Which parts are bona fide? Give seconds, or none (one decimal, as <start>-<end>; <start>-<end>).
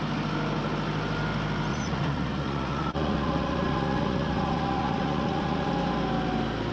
0.0-1.7; 5.7-6.7